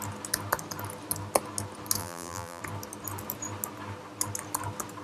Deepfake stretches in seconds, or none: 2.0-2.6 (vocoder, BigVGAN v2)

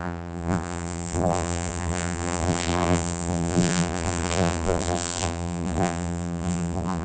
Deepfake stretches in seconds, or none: 0.0-7.0 (vocoder, BigVGAN v2)